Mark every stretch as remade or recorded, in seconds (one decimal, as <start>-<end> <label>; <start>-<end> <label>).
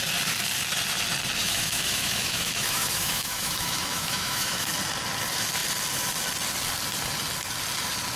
0.0-1.4 recorded; 1.4-4.7 remade; 4.7-8.2 recorded